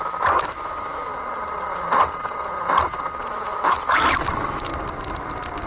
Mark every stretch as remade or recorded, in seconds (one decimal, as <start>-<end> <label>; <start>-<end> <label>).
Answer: 0.0-1.1 remade; 1.1-3.3 recorded; 3.3-4.7 remade; 4.7-5.7 recorded